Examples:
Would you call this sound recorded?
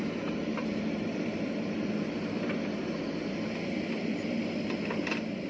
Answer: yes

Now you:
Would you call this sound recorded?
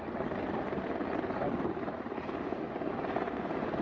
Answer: yes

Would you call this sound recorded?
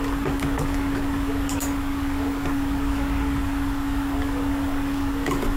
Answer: no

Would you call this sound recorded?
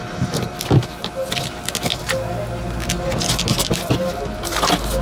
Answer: yes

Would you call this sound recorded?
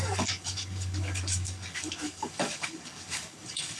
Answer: no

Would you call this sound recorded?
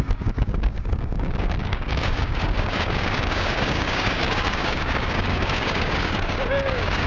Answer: no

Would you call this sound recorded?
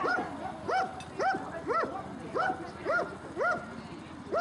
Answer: yes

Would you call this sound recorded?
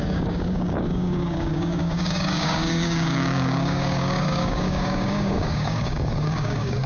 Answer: no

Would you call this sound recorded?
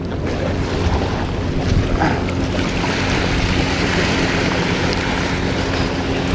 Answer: yes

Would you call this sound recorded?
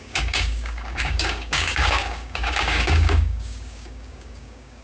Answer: no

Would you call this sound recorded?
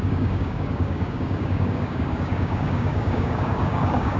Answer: no